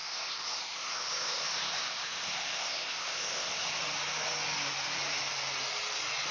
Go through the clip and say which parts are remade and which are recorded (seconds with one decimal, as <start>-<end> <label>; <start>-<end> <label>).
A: 0.0-3.8 remade; 3.8-6.3 recorded